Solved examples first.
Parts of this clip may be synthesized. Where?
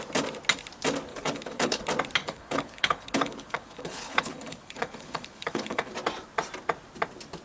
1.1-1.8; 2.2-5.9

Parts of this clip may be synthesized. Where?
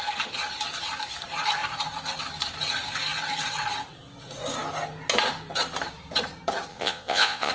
6.7-7.5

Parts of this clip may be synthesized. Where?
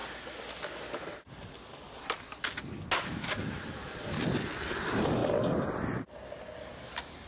none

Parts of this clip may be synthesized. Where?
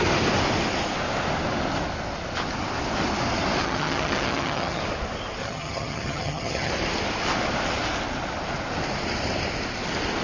3.6-4.8; 5.4-6.7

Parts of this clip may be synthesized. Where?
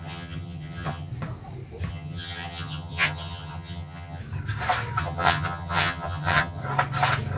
0.0-1.1; 1.9-4.2; 5.0-6.6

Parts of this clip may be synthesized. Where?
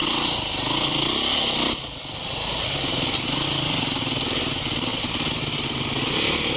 none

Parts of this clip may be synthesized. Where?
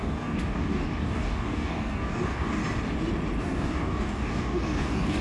0.0-2.6; 3.4-5.2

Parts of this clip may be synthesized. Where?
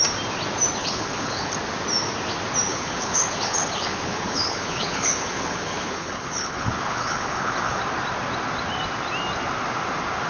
0.8-1.5; 2.7-7.8